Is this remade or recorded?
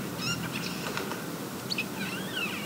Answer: recorded